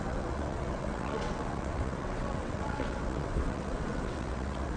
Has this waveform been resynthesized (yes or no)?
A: yes